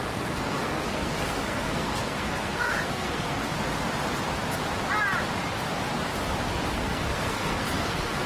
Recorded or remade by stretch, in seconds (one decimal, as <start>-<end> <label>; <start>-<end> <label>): 0.0-3.5 remade; 3.5-6.7 recorded; 6.7-8.3 remade